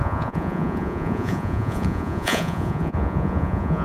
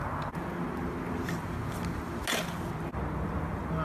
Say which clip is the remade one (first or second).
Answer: first